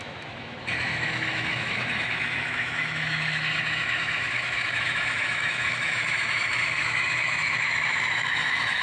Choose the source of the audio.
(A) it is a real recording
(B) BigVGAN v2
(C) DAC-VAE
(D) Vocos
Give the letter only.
C